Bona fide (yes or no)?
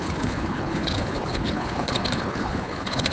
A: no